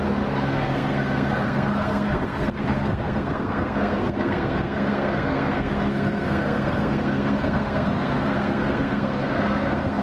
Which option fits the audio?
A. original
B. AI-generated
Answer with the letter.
B